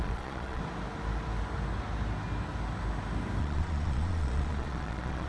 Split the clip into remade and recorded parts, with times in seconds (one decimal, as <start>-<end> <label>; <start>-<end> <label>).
0.0-0.6 remade; 0.6-3.4 recorded; 3.4-5.3 remade